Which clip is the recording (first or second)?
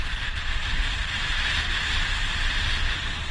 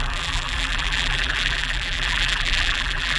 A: first